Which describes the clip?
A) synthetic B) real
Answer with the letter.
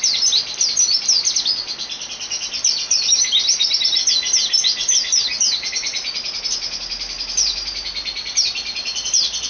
B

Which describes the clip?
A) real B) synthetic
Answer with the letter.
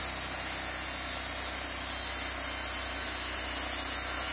A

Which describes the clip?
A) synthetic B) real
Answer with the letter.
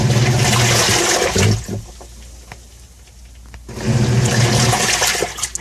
B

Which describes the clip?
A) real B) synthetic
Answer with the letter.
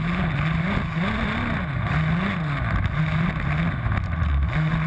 A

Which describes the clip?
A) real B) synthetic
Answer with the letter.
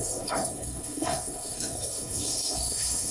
B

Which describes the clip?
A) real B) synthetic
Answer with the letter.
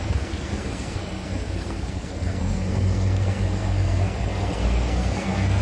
B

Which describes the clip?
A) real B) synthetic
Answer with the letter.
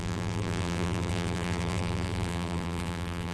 B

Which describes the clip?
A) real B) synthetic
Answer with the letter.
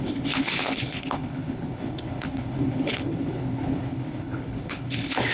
B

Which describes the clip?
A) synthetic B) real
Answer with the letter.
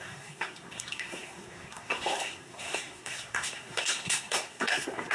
A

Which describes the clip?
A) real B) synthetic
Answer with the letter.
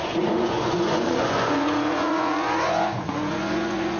B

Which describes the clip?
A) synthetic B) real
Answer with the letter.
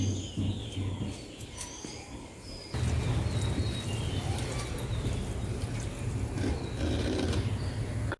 B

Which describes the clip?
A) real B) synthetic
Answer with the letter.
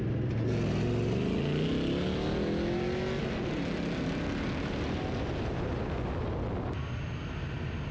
A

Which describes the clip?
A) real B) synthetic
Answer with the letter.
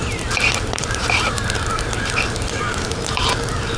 B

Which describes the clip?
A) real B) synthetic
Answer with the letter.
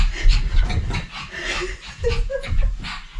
A